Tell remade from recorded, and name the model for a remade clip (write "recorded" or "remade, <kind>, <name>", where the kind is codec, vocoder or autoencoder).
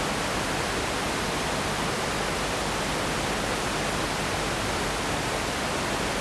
recorded